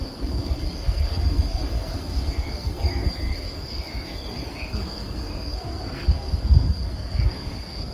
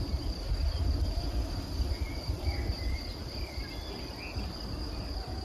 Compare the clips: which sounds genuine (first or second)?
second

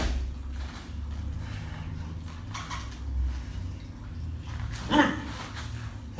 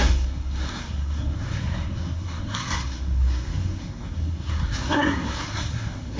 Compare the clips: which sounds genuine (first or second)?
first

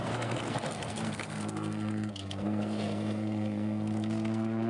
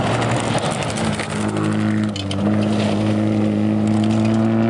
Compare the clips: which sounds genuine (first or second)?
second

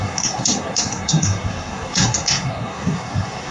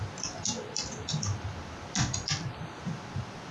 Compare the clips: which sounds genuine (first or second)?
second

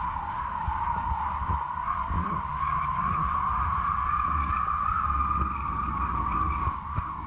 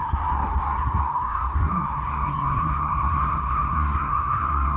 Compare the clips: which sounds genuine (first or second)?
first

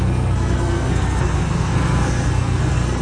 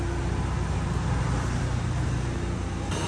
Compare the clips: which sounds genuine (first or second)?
second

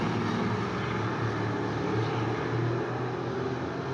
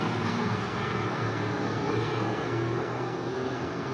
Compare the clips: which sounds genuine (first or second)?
first